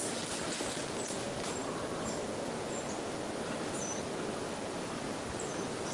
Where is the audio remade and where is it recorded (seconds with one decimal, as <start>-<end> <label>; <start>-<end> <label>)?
0.0-5.9 recorded